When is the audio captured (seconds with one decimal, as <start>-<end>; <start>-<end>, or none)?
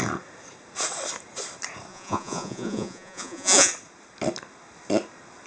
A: 0.0-1.9; 3.7-5.5